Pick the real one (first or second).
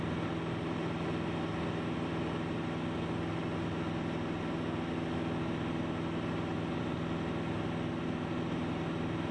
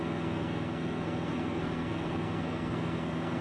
first